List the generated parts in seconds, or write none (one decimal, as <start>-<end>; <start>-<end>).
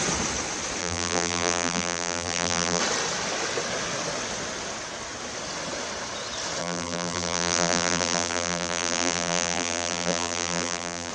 0.8-2.8; 6.6-11.1